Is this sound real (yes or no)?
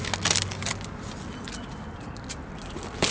yes